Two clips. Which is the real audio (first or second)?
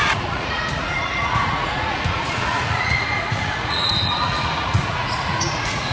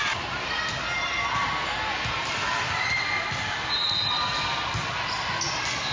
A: second